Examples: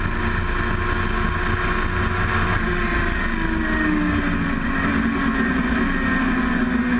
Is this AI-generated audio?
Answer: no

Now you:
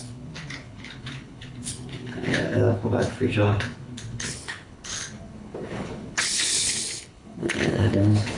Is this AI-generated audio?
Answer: yes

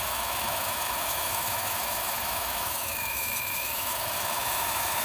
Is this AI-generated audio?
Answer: yes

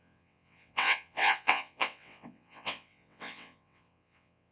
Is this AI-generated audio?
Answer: yes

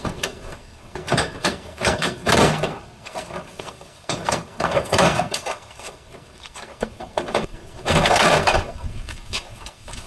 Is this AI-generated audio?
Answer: yes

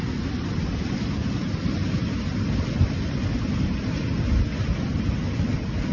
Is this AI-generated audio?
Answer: no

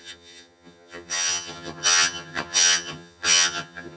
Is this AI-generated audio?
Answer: yes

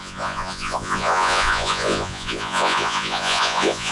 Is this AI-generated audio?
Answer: yes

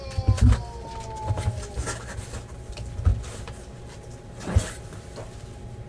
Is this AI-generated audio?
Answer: no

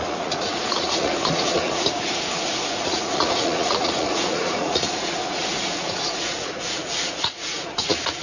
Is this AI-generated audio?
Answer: yes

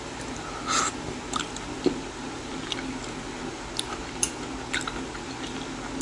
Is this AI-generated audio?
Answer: no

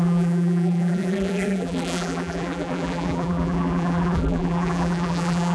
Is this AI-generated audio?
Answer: yes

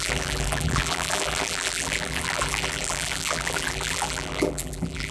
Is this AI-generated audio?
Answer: yes